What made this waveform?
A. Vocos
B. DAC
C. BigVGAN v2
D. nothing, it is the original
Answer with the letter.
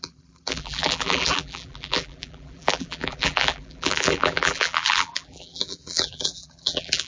C